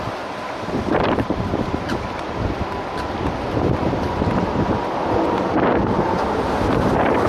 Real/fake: fake